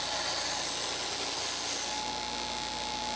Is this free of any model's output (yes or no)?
yes